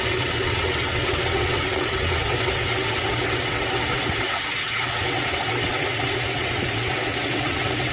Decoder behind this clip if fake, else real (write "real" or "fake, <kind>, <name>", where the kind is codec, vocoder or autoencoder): fake, vocoder, WaveNeXt